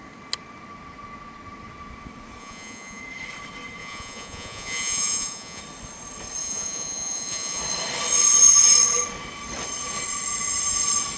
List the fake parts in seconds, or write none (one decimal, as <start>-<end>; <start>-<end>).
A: 2.4-3.0; 3.8-5.6; 6.4-7.6